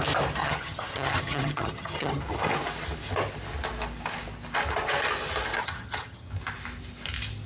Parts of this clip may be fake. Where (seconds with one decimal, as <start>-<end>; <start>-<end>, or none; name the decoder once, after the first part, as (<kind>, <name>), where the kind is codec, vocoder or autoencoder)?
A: 0.4-2.2 (vocoder, HiFi-GAN); 5.6-6.3